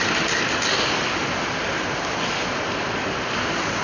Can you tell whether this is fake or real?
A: real